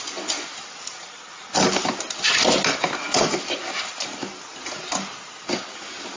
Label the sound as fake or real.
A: real